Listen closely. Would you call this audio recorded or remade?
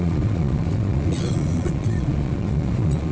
remade